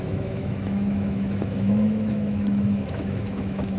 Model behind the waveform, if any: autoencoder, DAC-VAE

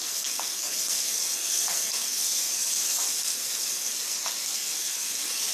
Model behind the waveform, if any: codec, SNAC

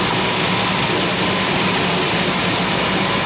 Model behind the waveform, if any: none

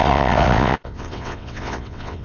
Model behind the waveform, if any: vocoder, WaveNeXt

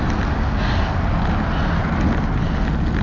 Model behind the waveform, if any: none